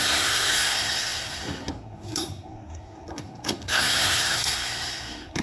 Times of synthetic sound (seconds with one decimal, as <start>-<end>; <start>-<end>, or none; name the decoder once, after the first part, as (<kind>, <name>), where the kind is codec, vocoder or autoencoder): 0.0-5.4 (codec, SNAC)